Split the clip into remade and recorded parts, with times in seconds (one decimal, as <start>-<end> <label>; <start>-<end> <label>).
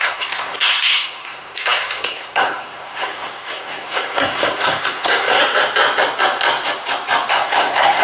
0.0-5.4 remade; 5.4-7.3 recorded; 7.3-8.0 remade